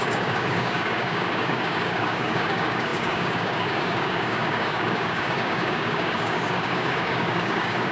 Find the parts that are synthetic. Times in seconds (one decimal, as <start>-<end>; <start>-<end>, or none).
0.0-7.9